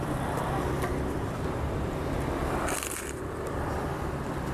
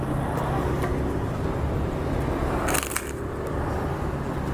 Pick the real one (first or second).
second